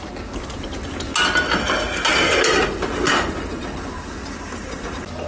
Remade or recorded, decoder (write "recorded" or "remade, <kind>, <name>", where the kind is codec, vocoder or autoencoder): recorded